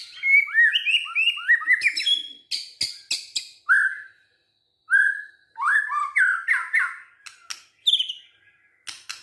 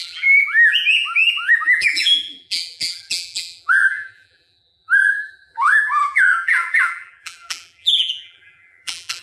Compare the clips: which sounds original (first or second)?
first